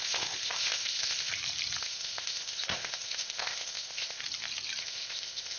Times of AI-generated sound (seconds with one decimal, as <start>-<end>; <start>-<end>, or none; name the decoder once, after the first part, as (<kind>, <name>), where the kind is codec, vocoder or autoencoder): 0.0-1.3 (codec, ZipCodec); 1.8-4.2; 4.8-5.6